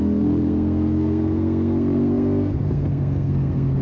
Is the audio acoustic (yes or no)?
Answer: no